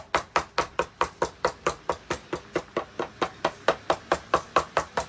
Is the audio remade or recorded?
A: recorded